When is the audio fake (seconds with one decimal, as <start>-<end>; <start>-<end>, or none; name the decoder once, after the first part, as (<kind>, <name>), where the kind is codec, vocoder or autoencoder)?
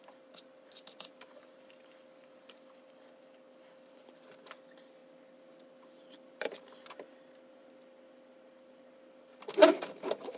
none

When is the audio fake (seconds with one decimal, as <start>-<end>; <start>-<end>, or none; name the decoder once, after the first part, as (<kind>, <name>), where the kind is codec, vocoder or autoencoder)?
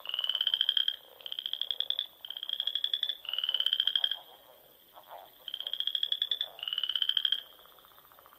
0.0-0.8 (vocoder, BigVGAN v2); 2.5-8.4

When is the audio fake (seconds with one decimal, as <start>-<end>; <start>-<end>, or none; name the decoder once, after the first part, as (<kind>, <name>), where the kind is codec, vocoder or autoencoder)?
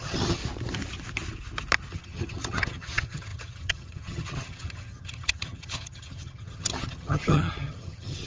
0.0-0.4 (vocoder, HiFi-GAN); 1.9-8.3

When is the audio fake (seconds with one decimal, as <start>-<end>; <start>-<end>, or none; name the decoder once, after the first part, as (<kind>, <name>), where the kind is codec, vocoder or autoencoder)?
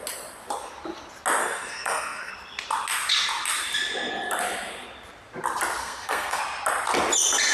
1.4-2.3 (codec, SNAC); 5.8-6.4